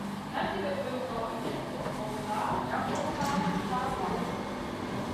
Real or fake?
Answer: real